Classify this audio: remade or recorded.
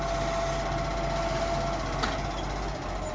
recorded